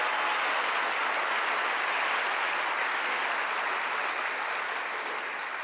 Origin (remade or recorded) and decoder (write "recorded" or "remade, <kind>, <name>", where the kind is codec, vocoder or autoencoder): recorded